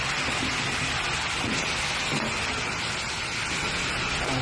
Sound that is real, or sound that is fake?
real